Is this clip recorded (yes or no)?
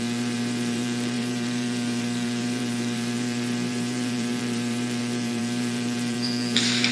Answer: no